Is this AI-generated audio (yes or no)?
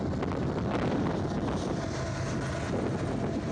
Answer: no